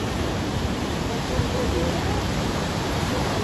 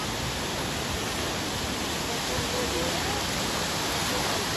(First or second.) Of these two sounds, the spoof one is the first